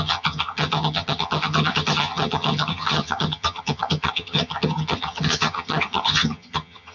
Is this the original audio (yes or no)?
no